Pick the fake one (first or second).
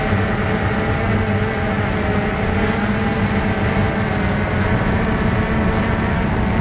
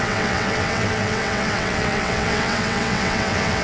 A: second